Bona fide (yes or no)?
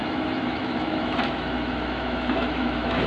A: no